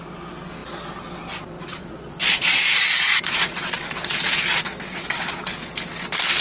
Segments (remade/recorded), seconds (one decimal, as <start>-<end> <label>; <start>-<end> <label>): 0.0-1.7 recorded; 1.7-5.5 remade; 5.5-6.4 recorded